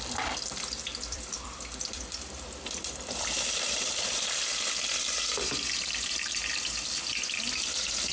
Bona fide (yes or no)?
no